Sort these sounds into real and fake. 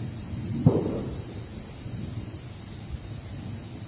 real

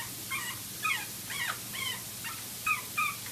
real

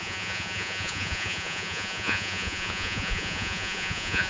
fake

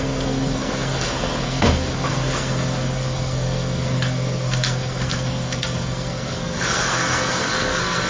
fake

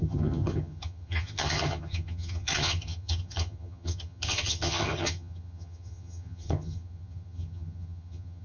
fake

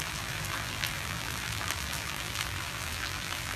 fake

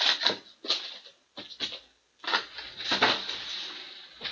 real